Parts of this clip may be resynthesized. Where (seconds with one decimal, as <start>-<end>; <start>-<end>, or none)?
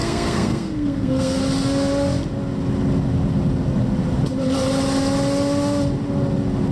0.0-1.4